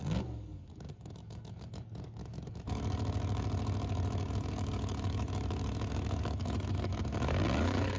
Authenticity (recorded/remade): remade